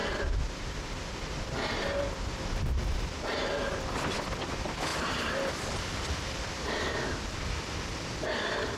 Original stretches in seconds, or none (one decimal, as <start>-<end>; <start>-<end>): 0.0-4.9